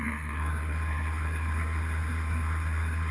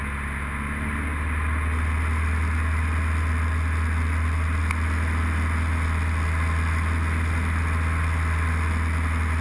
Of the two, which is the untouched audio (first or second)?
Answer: second